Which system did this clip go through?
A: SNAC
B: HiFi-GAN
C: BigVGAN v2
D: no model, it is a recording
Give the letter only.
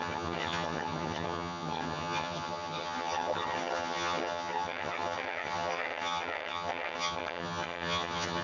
B